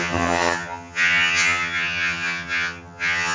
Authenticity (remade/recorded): remade